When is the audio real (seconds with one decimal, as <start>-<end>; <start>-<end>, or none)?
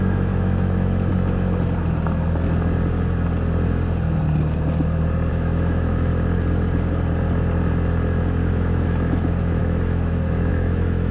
1.1-5.3; 6.1-8.5